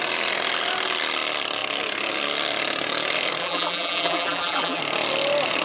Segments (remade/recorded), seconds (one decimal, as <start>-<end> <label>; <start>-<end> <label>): 0.0-3.4 recorded; 3.4-4.8 remade; 4.8-5.6 recorded